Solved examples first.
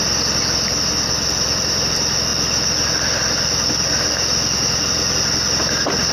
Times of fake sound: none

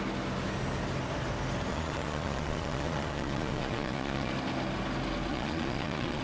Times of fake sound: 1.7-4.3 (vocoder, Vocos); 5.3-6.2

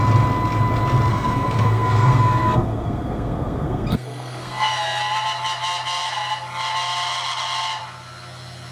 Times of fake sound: 1.1-4.7 (codec, SNAC)

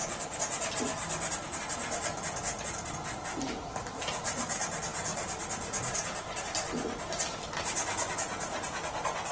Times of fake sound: none

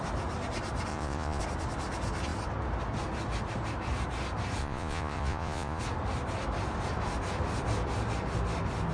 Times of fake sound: 0.9-1.4 (vocoder, Vocos); 4.6-5.8

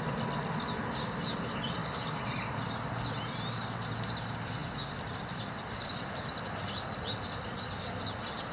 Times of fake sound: none

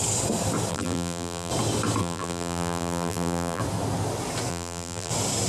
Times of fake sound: 0.7-1.5 (vocoder, BigVGAN v2); 2.0-3.6; 4.5-5.1

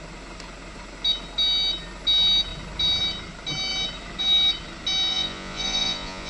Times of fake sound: 5.1-6.3 (vocoder, Vocos)